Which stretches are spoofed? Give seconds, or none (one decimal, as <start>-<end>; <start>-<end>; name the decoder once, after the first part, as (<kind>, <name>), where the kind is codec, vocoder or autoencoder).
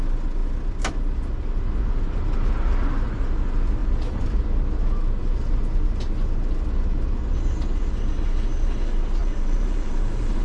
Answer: 9.2-10.4 (vocoder, BigVGAN v2)